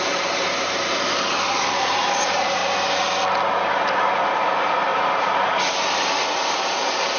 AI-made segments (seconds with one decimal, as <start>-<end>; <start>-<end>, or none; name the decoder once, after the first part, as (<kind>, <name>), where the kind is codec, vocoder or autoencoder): 0.0-2.6 (vocoder, BigVGAN v2); 3.7-7.2